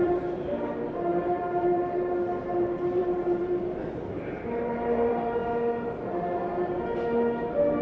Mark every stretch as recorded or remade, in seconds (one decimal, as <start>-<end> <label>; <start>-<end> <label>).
0.0-3.4 remade; 3.4-3.9 recorded; 3.9-5.4 remade; 5.4-7.8 recorded